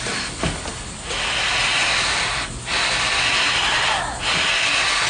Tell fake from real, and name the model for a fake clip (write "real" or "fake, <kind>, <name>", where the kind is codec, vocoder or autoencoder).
real